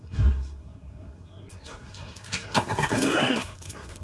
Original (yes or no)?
no